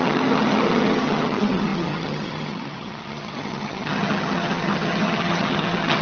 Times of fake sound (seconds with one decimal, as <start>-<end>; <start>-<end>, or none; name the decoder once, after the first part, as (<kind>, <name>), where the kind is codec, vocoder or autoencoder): 0.0-6.0 (vocoder, HiFi-GAN)